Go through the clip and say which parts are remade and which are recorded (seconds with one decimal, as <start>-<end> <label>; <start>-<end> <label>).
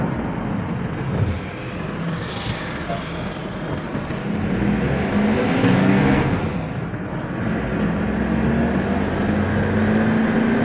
0.0-5.8 recorded; 5.8-6.4 remade; 6.4-10.6 recorded